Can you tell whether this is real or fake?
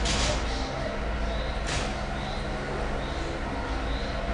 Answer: real